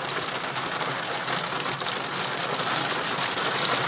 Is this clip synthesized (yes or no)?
no